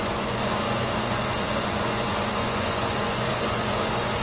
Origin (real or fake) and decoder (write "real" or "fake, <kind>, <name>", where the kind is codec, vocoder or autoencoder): fake, vocoder, Vocos